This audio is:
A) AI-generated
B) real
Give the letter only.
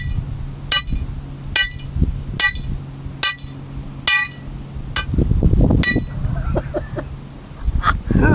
B